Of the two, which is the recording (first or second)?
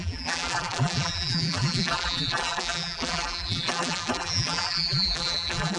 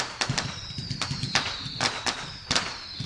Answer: second